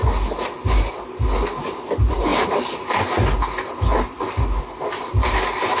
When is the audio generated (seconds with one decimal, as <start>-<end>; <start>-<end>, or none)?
none

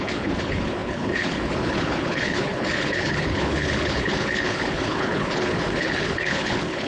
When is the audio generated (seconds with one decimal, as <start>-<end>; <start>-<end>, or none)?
0.0-6.9

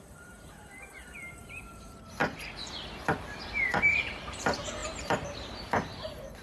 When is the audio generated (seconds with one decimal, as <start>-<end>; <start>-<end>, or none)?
0.0-2.2; 3.2-6.4

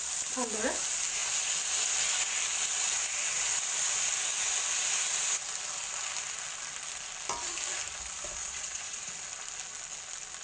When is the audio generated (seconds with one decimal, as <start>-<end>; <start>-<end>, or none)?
8.4-9.1

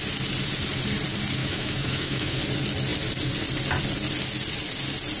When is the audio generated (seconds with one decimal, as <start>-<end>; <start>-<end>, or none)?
1.4-2.4

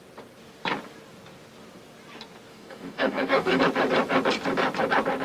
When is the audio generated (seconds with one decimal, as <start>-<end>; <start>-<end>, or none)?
2.5-3.6